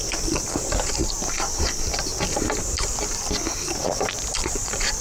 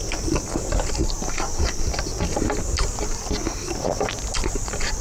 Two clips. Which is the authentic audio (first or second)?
second